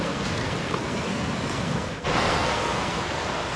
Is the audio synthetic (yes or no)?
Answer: yes